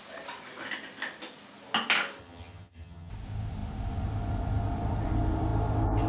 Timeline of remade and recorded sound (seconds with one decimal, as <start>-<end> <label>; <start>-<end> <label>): 0.0-2.2 recorded; 2.2-3.1 remade; 3.1-6.1 recorded